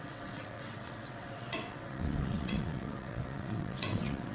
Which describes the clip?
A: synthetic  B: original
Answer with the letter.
A